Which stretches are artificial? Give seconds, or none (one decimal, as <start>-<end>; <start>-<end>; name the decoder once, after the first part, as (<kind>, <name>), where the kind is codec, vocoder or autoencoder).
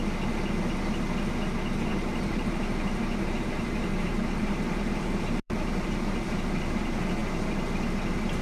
1.9-6.6 (vocoder, BigVGAN v2)